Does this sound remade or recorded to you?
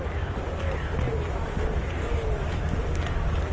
recorded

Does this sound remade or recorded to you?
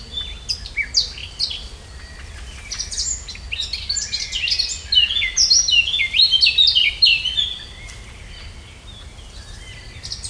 recorded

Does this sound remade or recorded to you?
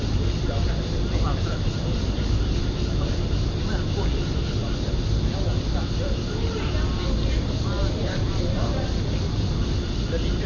recorded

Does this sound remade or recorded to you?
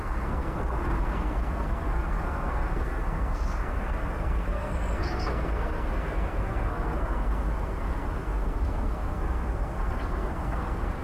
remade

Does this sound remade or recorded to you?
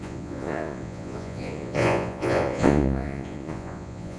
remade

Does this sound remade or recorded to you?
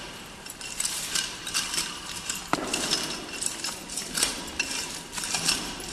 remade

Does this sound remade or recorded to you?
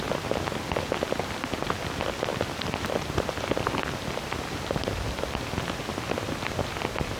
recorded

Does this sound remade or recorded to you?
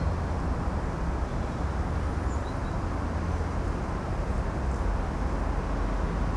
recorded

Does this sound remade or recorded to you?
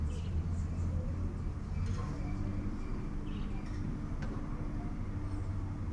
recorded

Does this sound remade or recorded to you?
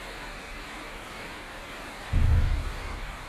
remade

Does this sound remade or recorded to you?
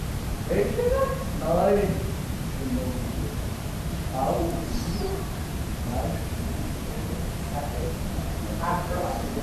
remade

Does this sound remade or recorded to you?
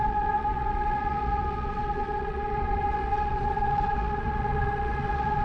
remade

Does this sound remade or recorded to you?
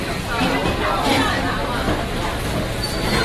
recorded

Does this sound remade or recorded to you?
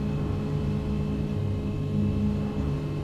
recorded